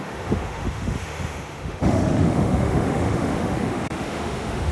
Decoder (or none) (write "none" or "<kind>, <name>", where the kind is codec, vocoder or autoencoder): autoencoder, DAC-VAE